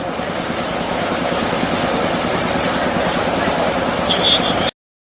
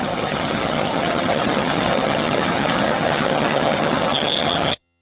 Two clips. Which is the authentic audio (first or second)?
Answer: first